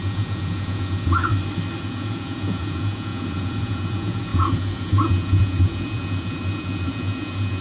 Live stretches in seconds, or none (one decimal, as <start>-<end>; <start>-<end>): 1.3-1.8